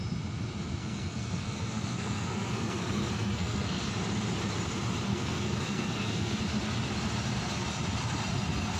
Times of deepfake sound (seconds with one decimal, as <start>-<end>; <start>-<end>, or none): 0.8-3.9; 5.1-6.4